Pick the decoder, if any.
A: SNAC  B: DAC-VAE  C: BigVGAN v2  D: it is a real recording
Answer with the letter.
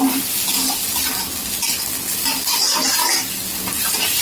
D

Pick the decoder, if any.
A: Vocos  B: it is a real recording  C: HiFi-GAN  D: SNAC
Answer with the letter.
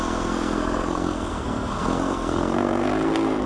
D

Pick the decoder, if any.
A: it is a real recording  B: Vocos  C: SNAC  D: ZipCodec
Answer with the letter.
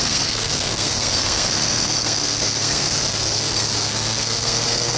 C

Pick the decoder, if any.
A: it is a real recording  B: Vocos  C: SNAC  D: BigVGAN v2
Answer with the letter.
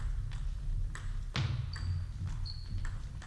A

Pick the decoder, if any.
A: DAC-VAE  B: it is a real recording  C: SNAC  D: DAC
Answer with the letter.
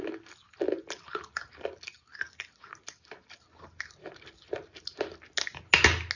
B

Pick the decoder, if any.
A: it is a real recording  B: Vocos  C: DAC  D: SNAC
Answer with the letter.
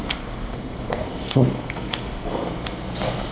D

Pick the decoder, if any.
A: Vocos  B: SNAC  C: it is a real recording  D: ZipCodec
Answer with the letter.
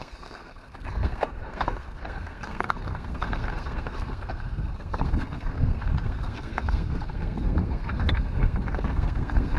B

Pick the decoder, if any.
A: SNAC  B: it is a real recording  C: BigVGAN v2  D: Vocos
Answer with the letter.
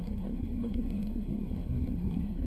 A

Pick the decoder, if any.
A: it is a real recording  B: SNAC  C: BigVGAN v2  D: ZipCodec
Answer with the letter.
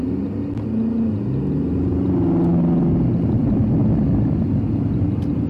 A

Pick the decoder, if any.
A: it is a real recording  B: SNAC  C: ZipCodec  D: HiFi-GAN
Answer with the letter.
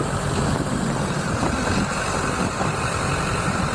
A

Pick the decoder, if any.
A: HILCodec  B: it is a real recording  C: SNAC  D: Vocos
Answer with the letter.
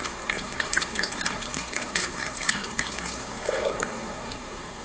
C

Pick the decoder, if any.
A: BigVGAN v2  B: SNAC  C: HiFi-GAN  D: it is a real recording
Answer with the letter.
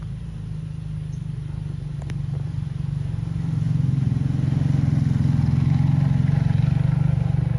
D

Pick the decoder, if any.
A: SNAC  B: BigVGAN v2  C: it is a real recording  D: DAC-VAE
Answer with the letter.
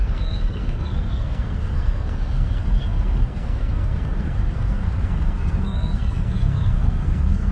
A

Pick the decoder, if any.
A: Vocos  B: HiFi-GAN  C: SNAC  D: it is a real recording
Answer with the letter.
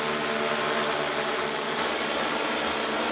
D